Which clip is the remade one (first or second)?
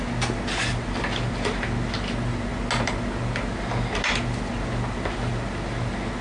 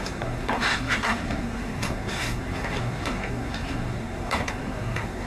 second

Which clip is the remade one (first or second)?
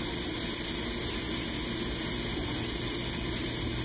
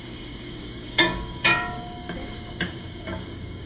second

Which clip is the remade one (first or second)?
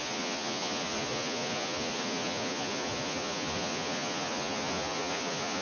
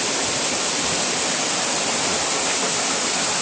first